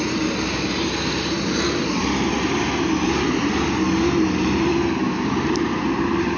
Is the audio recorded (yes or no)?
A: no